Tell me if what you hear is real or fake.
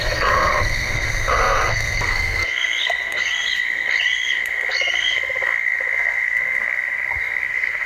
fake